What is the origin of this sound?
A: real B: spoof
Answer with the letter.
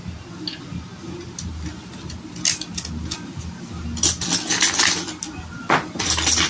A